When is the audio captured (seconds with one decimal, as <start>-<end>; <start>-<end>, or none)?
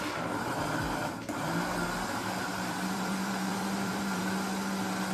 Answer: 0.0-2.4; 4.2-5.1